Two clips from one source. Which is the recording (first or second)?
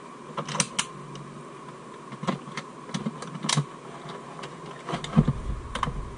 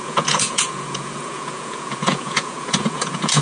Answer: first